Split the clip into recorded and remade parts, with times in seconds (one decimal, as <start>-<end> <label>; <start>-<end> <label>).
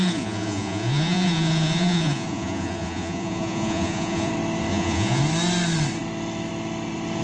0.0-4.3 remade; 4.3-4.7 recorded; 4.7-5.2 remade; 5.2-7.2 recorded